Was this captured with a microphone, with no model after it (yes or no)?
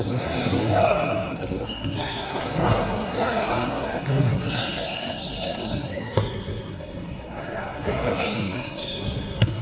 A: no